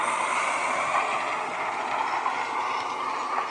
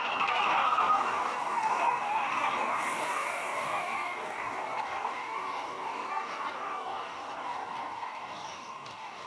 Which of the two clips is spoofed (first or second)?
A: second